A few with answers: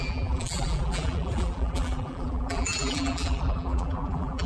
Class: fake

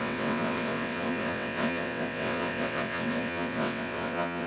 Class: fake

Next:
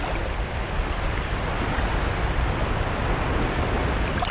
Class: real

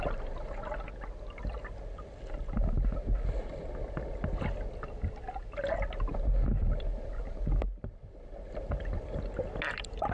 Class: real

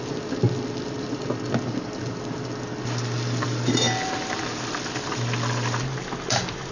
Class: real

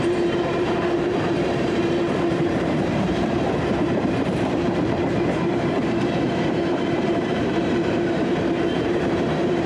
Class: fake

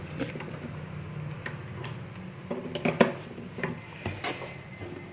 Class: real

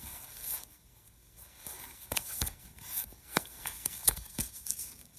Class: fake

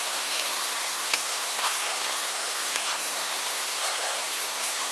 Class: fake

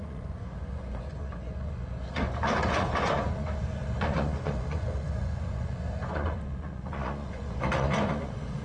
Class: fake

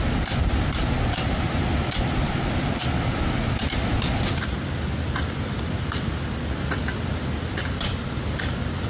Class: real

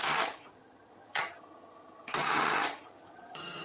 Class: fake